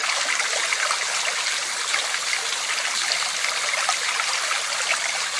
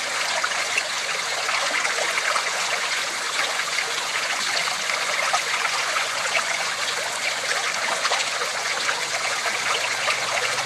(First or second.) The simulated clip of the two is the second